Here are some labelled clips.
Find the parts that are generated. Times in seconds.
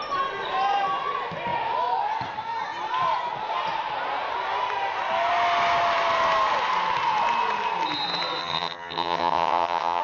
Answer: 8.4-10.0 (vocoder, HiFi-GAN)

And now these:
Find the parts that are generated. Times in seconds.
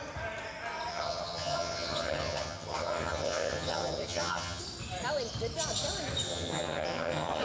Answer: 0.9-4.6 (vocoder, HiFi-GAN); 6.3-7.4